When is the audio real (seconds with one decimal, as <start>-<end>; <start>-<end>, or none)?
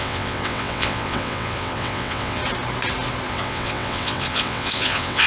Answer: 2.4-3.3